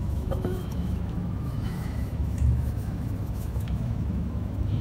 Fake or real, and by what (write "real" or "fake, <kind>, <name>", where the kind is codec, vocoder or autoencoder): fake, autoencoder, DAC-VAE